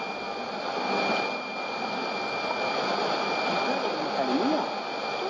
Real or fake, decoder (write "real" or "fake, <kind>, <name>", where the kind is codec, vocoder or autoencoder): real